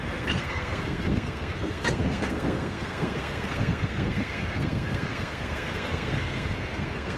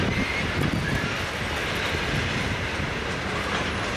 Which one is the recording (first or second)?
second